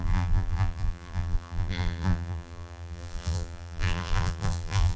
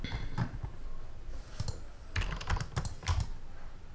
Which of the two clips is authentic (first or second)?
second